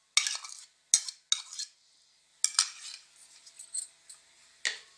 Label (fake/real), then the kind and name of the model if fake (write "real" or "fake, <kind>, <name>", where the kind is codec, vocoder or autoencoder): real